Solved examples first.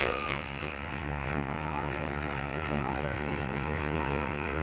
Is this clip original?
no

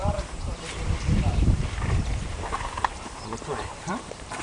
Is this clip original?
no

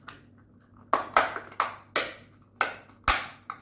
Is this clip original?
yes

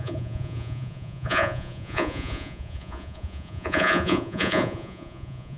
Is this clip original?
no